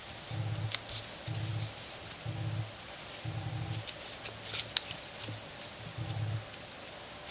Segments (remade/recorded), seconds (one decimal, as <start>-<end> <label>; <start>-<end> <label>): 0.0-7.3 recorded